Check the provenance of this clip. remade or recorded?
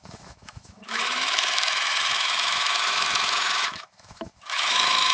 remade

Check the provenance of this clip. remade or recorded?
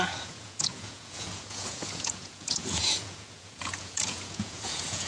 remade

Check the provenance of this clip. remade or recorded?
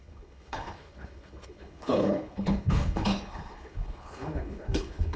remade